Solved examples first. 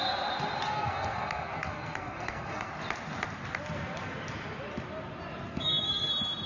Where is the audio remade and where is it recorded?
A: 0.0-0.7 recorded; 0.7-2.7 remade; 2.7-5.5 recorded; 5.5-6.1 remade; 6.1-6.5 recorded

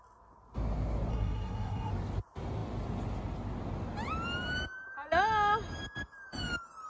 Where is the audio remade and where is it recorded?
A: 0.0-1.1 recorded; 1.1-1.9 remade; 1.9-6.9 recorded

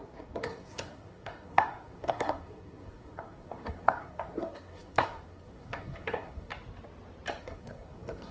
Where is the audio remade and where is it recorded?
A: 0.0-6.5 remade; 6.5-7.4 recorded; 7.4-8.3 remade

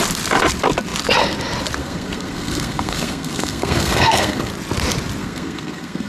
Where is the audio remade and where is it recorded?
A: 0.0-1.8 recorded; 1.8-4.5 remade; 4.5-5.2 recorded; 5.2-6.1 remade